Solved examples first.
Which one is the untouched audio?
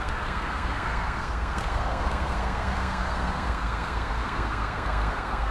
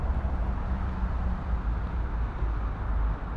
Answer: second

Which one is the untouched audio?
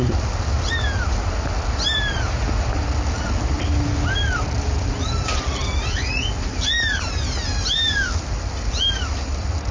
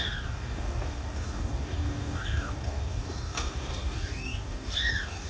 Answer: first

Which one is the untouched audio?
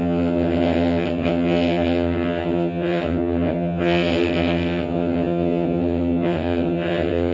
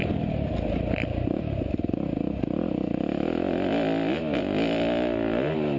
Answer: second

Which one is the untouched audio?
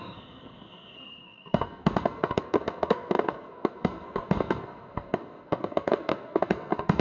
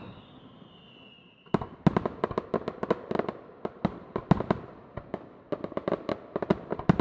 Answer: second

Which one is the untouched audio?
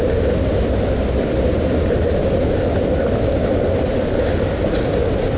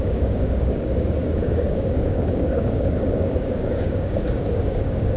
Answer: first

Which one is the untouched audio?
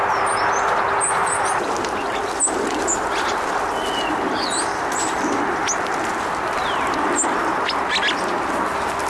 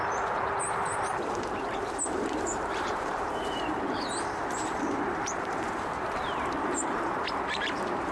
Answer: first